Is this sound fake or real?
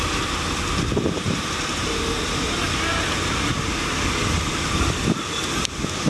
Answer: real